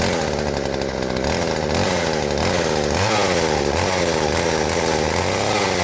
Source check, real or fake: real